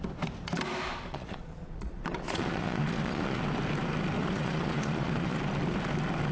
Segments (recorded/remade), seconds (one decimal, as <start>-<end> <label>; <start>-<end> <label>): 0.0-1.1 recorded; 1.1-3.4 remade; 3.4-4.2 recorded; 4.2-5.4 remade; 5.4-6.3 recorded